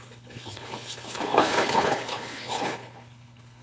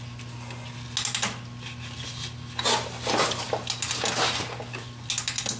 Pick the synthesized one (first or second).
first